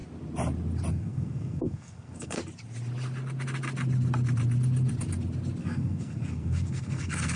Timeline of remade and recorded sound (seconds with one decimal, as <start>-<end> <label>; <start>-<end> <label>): 0.0-0.9 recorded; 0.9-2.4 remade; 2.4-5.6 recorded; 5.6-7.4 remade